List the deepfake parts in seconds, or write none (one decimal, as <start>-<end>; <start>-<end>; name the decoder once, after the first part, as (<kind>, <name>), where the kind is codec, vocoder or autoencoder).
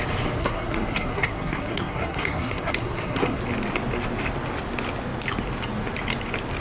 0.4-3.4 (codec, SNAC)